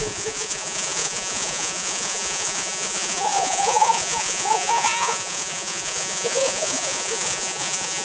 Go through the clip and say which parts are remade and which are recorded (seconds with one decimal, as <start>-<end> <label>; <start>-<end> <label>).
0.0-8.0 remade